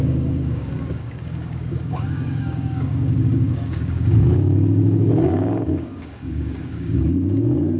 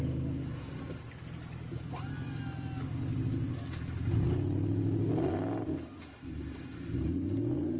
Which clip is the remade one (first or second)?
first